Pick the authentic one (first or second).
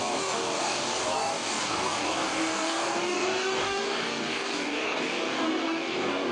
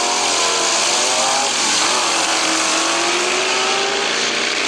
second